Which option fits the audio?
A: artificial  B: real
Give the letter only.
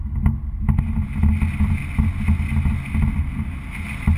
B